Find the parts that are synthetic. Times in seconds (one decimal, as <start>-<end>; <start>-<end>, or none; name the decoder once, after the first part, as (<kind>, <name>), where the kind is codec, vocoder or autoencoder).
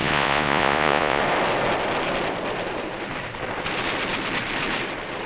0.0-1.2 (vocoder, Vocos)